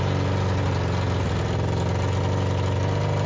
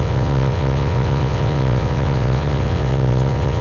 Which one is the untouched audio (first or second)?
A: first